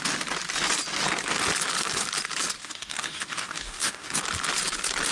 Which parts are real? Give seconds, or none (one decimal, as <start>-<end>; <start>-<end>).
0.0-2.6; 4.2-5.1